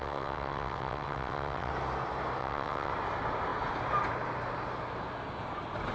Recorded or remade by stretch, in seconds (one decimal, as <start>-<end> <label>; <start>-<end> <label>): 0.0-1.7 remade; 1.7-2.4 recorded; 2.4-2.9 remade; 2.9-5.9 recorded